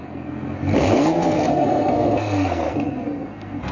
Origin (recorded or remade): remade